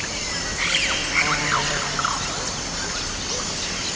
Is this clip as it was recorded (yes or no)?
yes